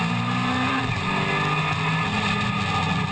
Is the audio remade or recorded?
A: recorded